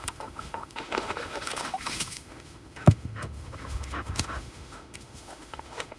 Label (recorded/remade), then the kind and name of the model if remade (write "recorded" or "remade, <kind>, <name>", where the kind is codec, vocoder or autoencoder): remade, autoencoder, DAC-VAE